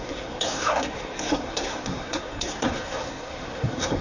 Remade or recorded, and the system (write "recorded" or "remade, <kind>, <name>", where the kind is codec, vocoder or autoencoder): remade, codec, SNAC